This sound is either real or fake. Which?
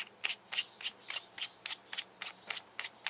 real